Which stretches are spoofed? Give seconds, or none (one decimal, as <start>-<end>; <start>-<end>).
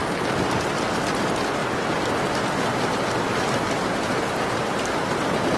none